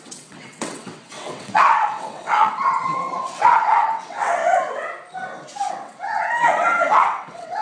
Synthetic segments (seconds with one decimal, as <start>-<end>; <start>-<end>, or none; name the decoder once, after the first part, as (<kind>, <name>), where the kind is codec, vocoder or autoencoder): 0.0-4.4 (vocoder, WaveNeXt); 5.7-7.6